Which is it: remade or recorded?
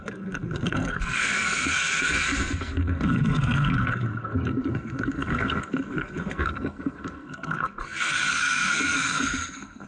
remade